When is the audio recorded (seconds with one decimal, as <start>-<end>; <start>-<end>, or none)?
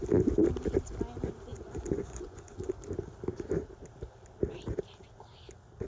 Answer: 0.0-1.5; 2.7-5.9